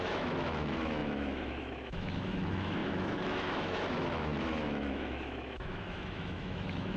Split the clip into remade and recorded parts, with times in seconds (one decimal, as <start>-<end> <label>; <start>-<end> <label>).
0.0-7.0 remade